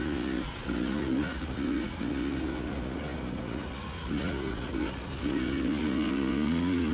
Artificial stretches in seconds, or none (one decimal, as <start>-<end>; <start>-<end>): 0.0-6.9